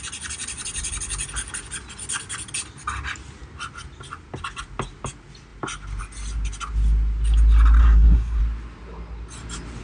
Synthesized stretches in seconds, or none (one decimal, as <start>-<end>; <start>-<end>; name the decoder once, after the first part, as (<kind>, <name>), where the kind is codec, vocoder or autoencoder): 7.8-8.4 (codec, SNAC)